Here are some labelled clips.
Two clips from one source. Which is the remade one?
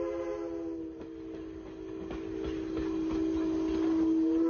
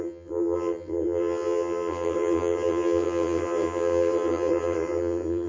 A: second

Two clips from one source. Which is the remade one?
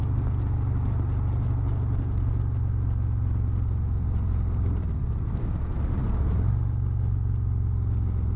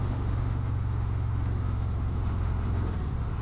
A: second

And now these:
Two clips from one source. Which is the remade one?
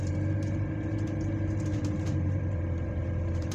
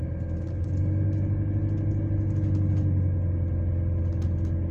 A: first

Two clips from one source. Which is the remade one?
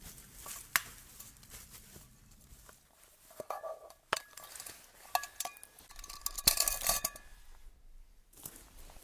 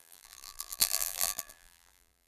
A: second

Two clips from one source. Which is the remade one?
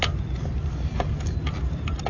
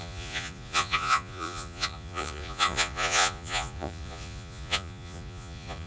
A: second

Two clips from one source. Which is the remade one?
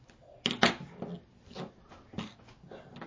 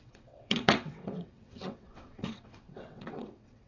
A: second